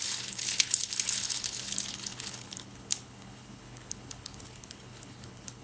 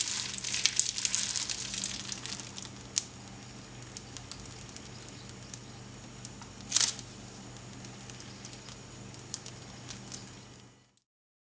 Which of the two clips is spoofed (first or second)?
first